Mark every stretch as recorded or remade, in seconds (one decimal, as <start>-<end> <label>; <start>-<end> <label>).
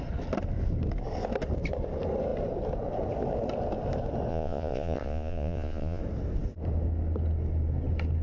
0.0-4.3 recorded; 4.3-6.0 remade; 6.0-8.2 recorded